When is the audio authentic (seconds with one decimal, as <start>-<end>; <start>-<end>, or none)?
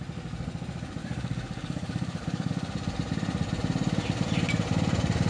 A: 0.0-1.0; 2.5-5.3